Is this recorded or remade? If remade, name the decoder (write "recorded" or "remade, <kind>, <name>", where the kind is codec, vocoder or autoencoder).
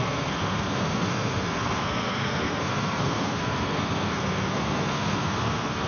remade, codec, SNAC